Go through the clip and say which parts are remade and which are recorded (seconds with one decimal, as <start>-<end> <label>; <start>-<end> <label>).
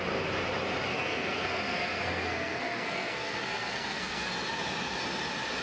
0.0-0.9 recorded; 0.9-4.3 remade; 4.3-5.6 recorded